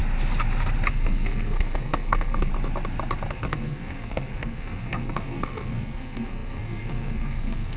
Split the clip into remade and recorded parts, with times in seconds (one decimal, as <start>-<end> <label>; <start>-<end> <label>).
0.0-0.9 recorded; 0.9-2.5 remade; 2.5-3.3 recorded; 3.3-7.8 remade